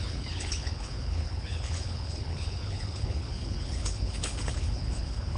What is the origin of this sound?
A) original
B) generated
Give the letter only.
B